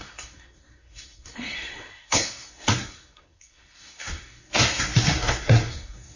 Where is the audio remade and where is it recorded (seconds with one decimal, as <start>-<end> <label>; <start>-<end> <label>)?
0.0-6.2 remade